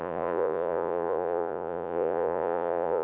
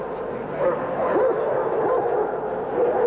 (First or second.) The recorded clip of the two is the second